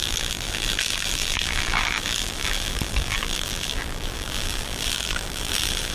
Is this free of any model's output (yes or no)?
no